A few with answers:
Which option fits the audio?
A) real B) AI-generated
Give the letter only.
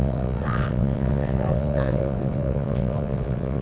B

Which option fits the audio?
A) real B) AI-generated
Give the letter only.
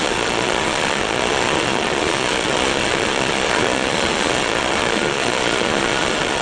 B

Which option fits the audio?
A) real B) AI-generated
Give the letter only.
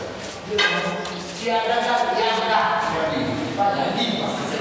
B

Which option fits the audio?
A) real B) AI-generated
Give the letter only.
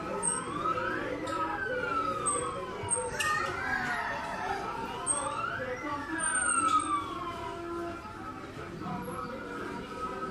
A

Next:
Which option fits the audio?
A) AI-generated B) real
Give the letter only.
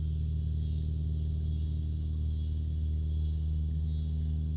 B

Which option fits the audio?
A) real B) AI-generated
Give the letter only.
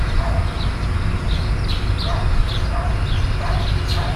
A